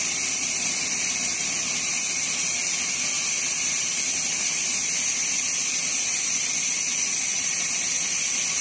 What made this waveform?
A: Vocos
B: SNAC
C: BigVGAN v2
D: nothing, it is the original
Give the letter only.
C